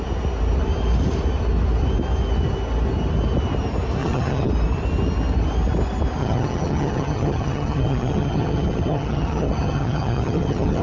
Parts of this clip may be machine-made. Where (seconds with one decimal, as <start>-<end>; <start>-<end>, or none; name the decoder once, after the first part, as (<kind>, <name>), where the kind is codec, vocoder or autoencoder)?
4.0-4.5 (vocoder, HiFi-GAN); 6.2-10.8